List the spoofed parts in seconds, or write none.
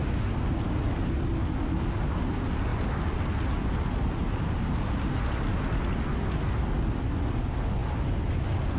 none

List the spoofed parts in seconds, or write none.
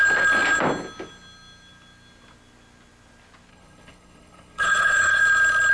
3.5-5.2